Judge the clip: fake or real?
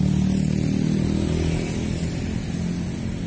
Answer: real